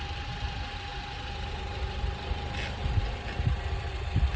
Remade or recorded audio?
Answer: recorded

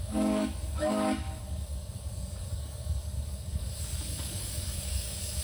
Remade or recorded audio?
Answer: remade